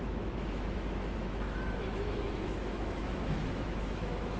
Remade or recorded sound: remade